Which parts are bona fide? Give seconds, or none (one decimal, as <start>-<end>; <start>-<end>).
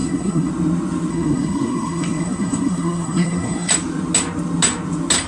0.5-1.1; 3.7-5.3